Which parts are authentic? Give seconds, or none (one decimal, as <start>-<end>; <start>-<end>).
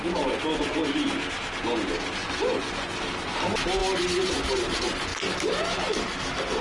0.0-2.2; 3.0-6.6